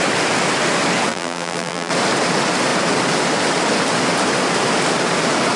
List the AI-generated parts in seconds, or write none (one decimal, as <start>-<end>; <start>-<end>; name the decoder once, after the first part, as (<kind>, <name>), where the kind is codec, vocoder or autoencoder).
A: 1.1-1.9 (vocoder, BigVGAN v2)